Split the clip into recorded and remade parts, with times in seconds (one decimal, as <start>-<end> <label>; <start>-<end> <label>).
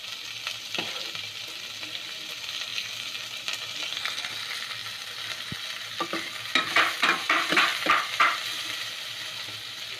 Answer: 0.0-2.7 remade; 2.7-3.4 recorded; 3.4-4.8 remade; 4.8-5.8 recorded; 5.8-10.0 remade